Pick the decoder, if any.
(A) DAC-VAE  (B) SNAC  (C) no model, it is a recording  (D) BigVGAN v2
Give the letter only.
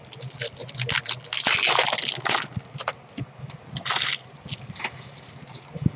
C